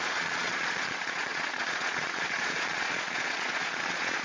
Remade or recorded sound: remade